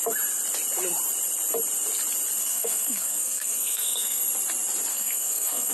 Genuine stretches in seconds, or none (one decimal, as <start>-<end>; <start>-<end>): 0.0-2.4; 4.2-4.9